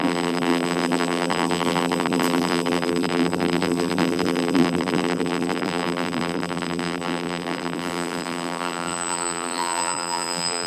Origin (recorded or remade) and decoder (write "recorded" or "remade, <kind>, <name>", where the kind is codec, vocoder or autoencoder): remade, vocoder, BigVGAN v2